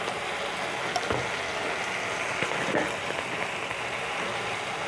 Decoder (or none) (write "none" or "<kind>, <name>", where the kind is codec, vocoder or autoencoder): none